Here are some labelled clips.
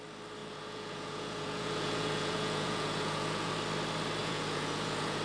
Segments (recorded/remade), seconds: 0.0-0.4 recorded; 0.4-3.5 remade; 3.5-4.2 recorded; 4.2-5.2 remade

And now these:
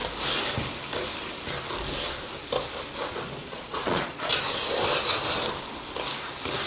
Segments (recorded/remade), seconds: 0.0-3.4 recorded; 3.4-4.3 remade; 4.3-6.7 recorded

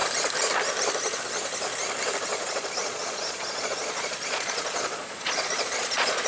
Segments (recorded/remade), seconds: 0.0-2.3 recorded; 2.3-6.3 remade

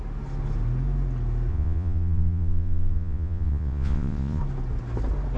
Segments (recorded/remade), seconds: 0.0-1.5 recorded; 1.5-4.4 remade; 4.4-5.4 recorded

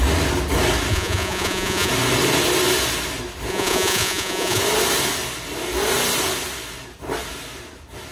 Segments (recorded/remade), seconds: 0.0-0.9 recorded; 0.9-1.9 remade; 1.9-3.5 recorded; 3.5-4.6 remade; 4.6-8.1 recorded

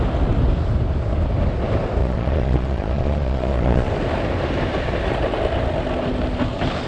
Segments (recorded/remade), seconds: 0.0-2.0 recorded; 2.0-3.9 remade; 3.9-6.9 recorded

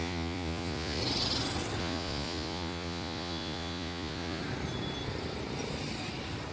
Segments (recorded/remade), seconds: 0.0-1.0 remade; 1.0-1.8 recorded; 1.8-4.4 remade; 4.4-6.5 recorded